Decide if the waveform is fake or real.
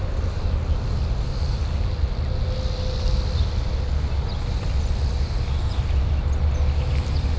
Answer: real